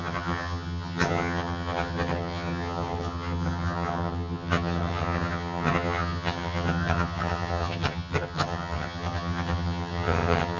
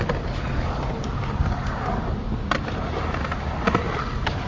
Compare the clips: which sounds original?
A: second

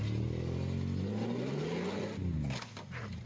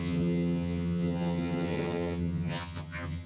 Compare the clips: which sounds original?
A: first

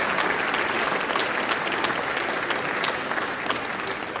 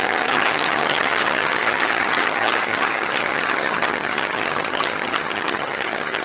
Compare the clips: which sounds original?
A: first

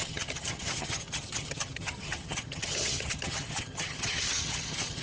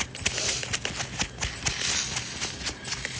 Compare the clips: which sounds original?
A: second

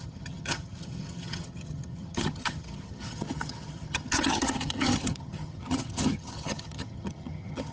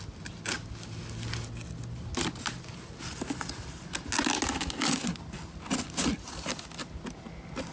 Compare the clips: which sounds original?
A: second